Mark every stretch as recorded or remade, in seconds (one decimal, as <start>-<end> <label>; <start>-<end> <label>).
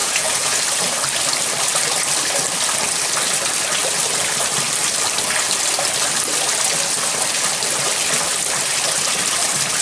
0.0-0.6 remade; 0.6-9.8 recorded